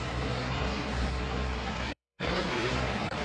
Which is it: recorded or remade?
remade